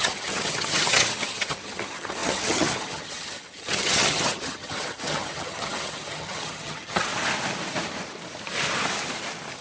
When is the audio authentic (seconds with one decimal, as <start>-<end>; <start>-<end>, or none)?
7.1-9.6